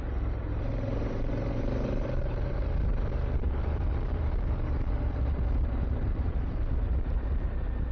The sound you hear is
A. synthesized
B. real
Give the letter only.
A